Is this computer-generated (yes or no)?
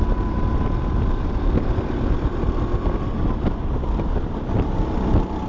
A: no